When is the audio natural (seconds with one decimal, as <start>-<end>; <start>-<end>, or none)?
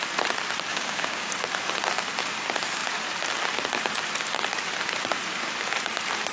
0.0-0.7; 1.3-6.3